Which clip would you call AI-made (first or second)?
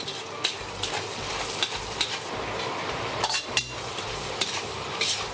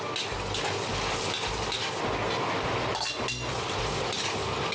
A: first